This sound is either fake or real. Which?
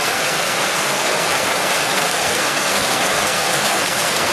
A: fake